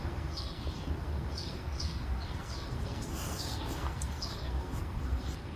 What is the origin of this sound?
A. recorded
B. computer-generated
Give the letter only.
B